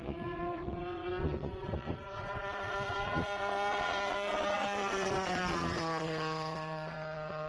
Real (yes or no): no